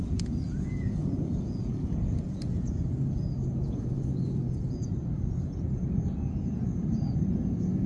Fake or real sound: fake